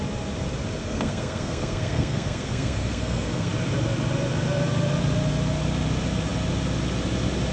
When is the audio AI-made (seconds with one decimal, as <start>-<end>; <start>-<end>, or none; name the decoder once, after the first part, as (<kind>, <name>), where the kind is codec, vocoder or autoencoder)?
0.8-3.5 (codec, SNAC)